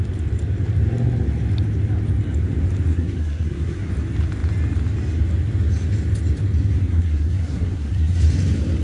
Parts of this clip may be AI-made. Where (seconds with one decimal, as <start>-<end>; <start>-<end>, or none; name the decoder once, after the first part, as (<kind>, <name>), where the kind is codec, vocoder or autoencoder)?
2.9-3.9 (codec, SNAC); 6.9-8.2